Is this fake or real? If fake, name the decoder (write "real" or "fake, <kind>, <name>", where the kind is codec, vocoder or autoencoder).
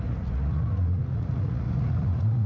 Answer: fake, vocoder, Vocos